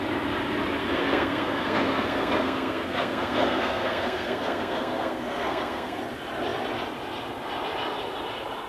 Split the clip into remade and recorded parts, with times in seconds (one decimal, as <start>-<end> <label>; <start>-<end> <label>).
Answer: 0.0-0.8 recorded; 0.8-6.0 remade; 6.0-8.7 recorded